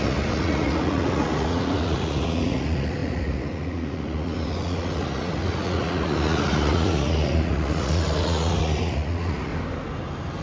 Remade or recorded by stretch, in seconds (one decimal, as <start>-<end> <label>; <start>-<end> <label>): 0.0-9.5 remade; 9.5-10.4 recorded